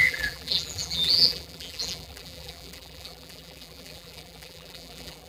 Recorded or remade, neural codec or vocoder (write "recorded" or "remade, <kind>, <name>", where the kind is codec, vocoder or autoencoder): remade, vocoder, BigVGAN v2